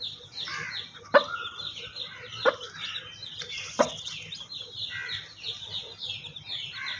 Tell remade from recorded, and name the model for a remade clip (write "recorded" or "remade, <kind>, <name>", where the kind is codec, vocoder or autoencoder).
recorded